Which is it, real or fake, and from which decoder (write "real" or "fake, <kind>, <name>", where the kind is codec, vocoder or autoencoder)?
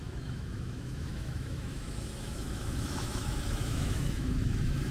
fake, autoencoder, DAC-VAE